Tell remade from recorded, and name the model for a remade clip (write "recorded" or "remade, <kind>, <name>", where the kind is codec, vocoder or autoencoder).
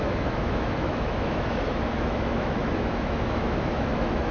remade, autoencoder, DAC-VAE